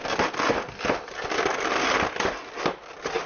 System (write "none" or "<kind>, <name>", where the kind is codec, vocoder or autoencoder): none